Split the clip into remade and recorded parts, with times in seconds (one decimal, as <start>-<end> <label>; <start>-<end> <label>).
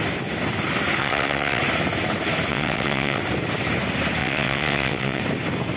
0.0-1.0 recorded; 1.0-1.6 remade; 1.6-2.5 recorded; 2.5-3.2 remade; 3.2-4.2 recorded; 4.2-5.2 remade; 5.2-5.8 recorded